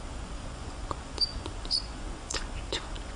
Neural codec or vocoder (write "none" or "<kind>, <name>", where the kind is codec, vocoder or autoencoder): vocoder, Vocos